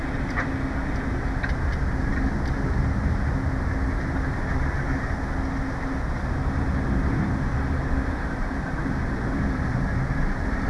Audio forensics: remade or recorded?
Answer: recorded